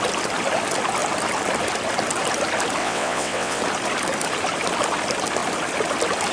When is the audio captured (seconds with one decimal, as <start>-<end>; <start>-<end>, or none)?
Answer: 0.0-2.8; 3.6-6.3

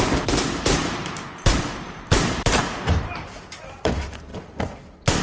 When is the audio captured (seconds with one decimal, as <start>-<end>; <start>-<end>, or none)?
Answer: 4.3-5.2

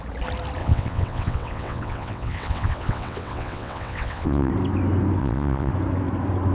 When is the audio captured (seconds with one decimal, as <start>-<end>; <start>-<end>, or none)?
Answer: 0.0-0.6; 4.5-5.2; 5.7-6.5

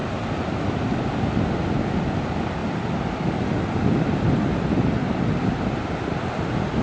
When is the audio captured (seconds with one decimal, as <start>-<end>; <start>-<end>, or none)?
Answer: 0.0-6.8

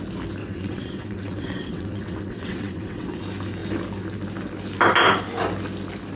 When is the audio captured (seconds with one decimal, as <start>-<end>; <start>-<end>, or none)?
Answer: 0.0-0.4; 3.2-6.2